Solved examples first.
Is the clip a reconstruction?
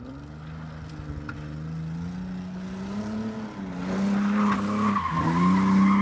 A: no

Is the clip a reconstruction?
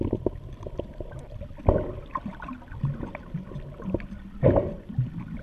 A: no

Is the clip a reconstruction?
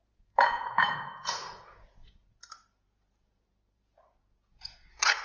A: yes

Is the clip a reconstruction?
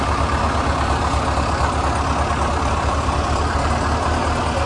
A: no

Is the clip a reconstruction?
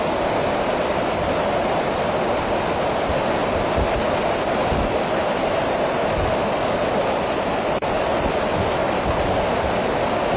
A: no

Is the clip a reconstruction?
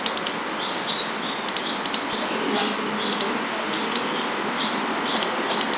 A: no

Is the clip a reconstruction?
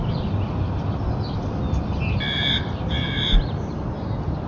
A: no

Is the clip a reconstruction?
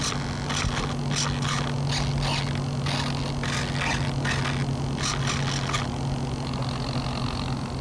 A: no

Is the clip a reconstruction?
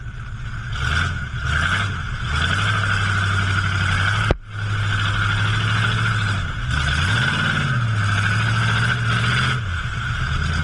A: no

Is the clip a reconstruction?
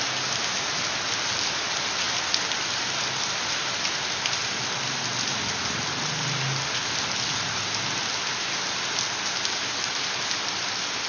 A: no